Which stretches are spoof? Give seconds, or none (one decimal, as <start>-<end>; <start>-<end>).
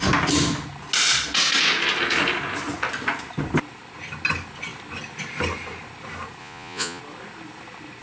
6.4-7.0